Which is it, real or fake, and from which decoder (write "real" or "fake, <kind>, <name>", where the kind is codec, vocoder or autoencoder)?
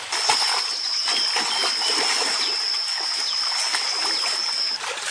real